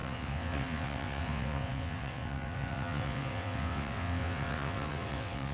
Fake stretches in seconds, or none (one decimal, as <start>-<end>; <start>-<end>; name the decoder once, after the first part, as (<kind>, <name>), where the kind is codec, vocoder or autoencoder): 0.0-5.5 (vocoder, WaveNeXt)